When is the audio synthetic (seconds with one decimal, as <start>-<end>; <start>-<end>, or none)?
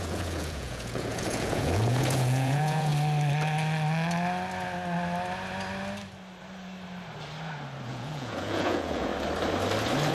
0.0-2.9; 7.9-9.1